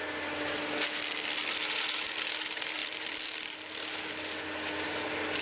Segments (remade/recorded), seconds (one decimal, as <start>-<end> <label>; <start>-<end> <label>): 0.0-2.8 recorded; 2.8-3.6 remade; 3.6-5.4 recorded